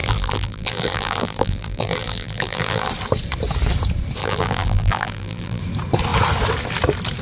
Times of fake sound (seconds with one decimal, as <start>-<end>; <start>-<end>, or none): 0.0-2.9; 4.2-5.6